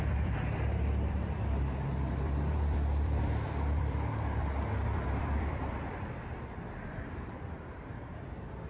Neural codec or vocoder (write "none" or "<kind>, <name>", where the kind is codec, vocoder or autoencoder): vocoder, BigVGAN v2